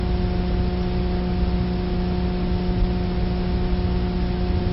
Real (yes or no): yes